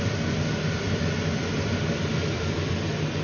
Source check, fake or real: real